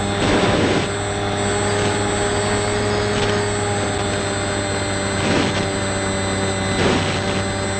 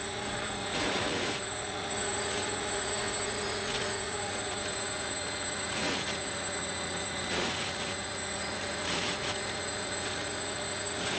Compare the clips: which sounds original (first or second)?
first